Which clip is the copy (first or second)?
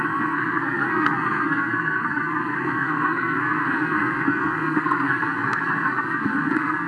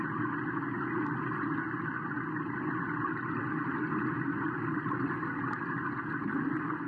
first